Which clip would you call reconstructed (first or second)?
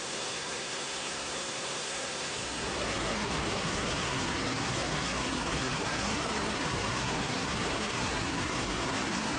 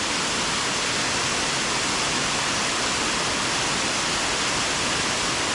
first